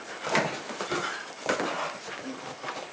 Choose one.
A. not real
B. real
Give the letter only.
B